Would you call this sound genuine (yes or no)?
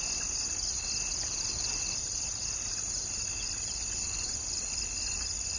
yes